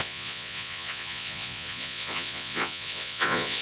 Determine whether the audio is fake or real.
fake